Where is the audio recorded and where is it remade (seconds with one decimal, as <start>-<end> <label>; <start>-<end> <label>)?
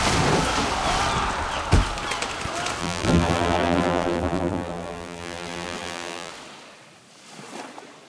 0.0-2.8 recorded; 2.8-6.3 remade; 6.3-8.1 recorded